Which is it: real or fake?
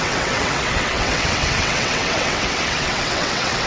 fake